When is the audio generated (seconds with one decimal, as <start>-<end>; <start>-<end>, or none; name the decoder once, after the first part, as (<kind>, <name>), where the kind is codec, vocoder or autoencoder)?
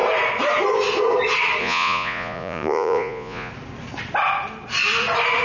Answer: 1.6-3.5 (vocoder, Vocos)